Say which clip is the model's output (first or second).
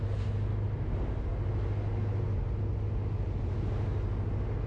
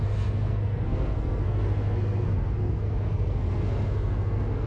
second